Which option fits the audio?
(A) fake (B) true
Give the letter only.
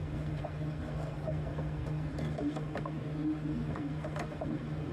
A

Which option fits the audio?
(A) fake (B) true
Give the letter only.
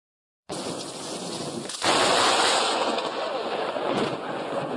A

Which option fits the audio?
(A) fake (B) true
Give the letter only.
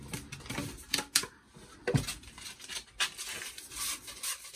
B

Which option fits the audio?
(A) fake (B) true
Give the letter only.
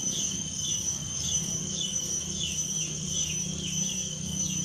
A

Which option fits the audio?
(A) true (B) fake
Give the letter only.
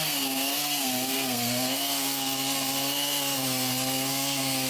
B